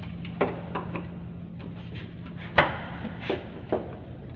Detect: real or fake fake